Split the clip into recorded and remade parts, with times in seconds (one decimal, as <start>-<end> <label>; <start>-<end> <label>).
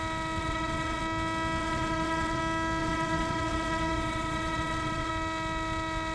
0.0-0.4 recorded; 0.4-1.0 remade; 1.0-1.6 recorded; 1.6-2.4 remade; 2.4-2.8 recorded; 2.8-5.1 remade; 5.1-6.1 recorded